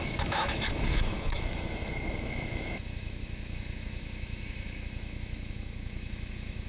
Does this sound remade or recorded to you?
remade